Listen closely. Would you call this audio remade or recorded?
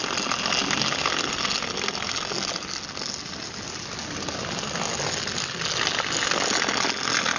recorded